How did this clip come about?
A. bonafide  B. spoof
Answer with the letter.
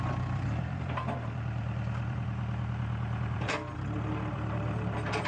B